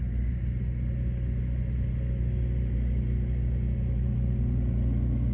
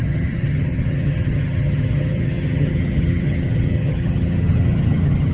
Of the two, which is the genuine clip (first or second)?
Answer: first